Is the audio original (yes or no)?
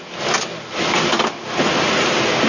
yes